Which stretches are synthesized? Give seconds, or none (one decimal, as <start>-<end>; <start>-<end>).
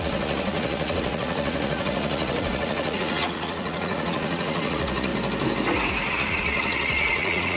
0.0-5.1; 6.1-7.6